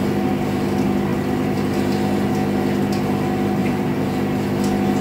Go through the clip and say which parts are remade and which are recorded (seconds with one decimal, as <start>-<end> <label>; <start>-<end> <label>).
0.0-3.6 recorded; 3.6-4.2 remade; 4.2-5.0 recorded